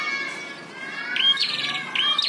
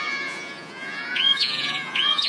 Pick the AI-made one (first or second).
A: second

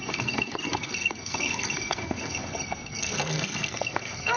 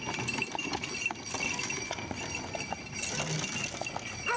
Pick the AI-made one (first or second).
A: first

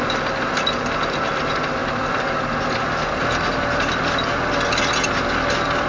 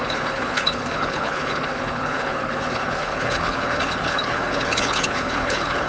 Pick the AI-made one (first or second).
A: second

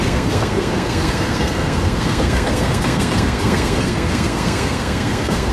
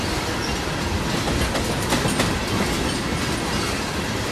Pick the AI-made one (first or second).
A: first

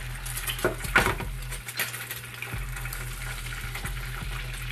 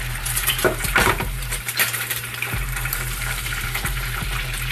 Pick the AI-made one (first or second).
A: second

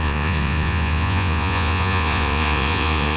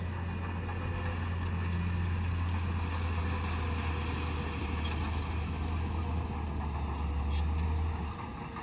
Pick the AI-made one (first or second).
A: first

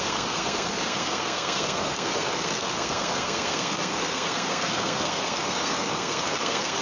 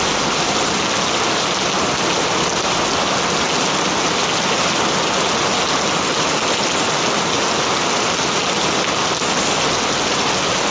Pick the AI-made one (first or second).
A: first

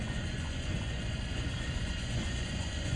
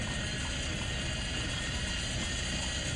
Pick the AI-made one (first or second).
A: first